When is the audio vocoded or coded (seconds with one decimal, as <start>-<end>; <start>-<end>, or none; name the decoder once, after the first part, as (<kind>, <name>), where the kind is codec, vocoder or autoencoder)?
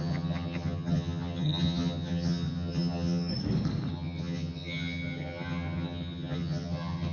0.0-3.3 (vocoder, HiFi-GAN); 3.9-7.1